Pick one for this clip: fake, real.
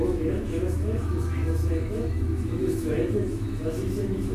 fake